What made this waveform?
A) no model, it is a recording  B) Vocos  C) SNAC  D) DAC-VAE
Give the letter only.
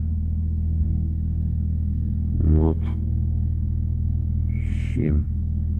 C